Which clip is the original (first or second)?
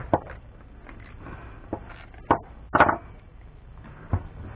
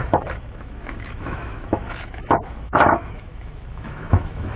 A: first